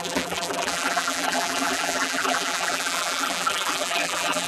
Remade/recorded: remade